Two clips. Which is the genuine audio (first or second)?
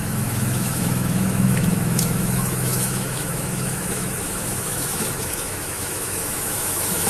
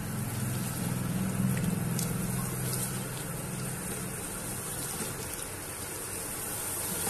second